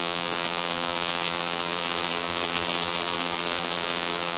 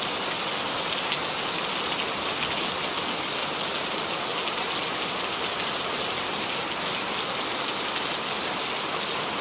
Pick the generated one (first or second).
first